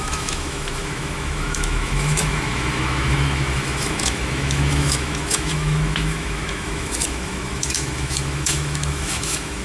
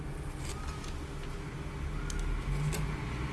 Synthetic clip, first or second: first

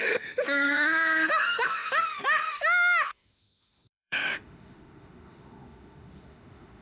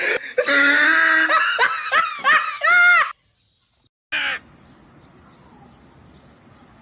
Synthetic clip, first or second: first